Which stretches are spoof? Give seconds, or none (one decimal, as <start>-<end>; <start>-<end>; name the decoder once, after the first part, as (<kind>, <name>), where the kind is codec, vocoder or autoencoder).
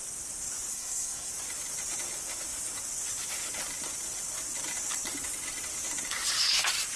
0.7-1.3 (codec, SNAC)